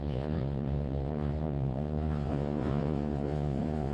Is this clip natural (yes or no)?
no